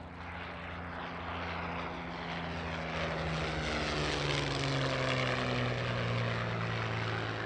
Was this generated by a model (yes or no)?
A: no